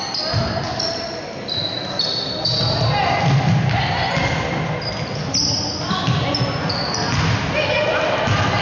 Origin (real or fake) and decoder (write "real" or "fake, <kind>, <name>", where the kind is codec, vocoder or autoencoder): real